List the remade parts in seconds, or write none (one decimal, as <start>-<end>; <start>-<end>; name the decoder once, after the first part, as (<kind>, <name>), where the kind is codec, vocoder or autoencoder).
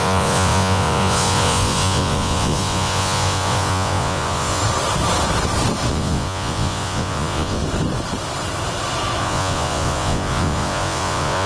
0.0-4.6 (vocoder, Vocos); 5.9-7.6; 9.2-11.5